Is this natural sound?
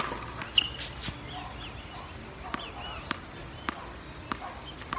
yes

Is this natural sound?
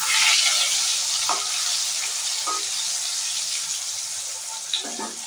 yes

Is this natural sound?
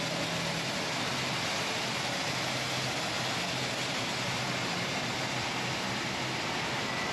yes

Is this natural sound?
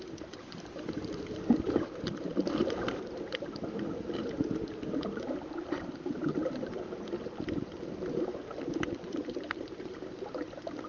no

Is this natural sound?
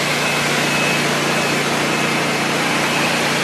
yes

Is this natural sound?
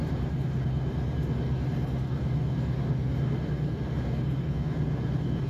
yes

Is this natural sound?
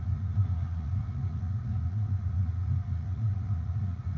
no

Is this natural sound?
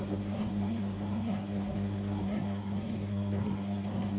no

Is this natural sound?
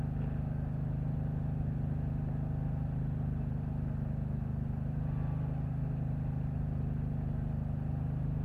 yes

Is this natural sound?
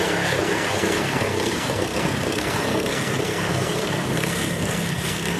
no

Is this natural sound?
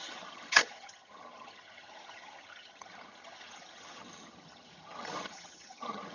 no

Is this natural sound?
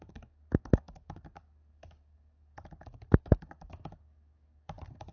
no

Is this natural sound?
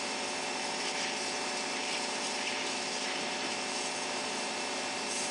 no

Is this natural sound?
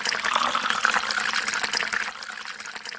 yes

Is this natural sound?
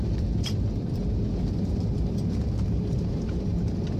no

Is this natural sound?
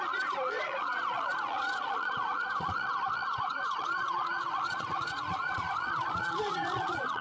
no